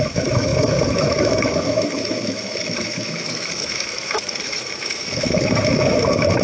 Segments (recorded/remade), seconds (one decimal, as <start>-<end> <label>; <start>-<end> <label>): 0.0-6.4 remade